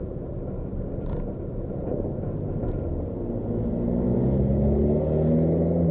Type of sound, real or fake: real